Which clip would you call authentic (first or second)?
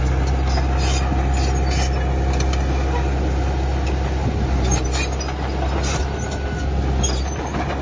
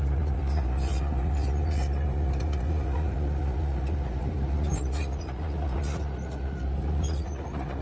first